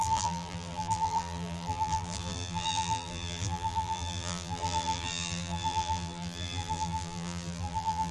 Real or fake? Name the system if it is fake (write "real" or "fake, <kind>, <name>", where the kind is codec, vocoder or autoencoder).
fake, vocoder, BigVGAN v2